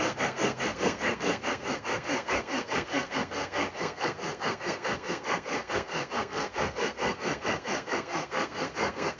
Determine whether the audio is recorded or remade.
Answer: remade